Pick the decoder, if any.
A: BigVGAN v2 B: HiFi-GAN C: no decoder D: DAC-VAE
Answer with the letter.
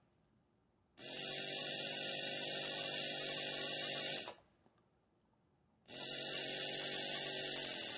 C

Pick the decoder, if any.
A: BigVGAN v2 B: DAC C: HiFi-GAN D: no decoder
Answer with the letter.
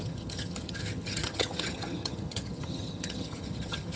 C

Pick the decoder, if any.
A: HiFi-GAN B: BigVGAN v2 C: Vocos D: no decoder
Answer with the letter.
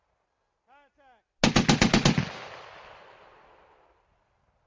D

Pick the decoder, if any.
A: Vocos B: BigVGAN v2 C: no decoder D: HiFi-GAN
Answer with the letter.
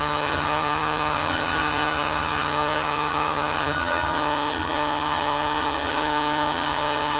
D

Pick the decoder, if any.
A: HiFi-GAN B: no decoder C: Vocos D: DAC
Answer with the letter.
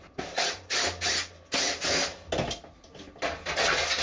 B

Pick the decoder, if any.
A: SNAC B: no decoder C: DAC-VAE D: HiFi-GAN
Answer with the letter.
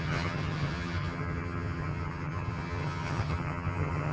D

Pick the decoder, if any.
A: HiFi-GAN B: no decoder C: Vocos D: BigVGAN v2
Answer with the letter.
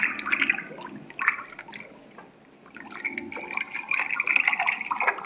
B